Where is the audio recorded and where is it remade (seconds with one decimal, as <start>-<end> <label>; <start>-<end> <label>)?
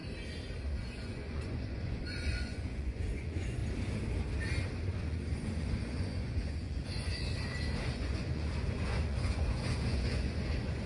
0.0-0.8 recorded; 0.8-3.6 remade; 3.6-5.0 recorded; 5.0-7.1 remade; 7.1-7.8 recorded; 7.8-10.9 remade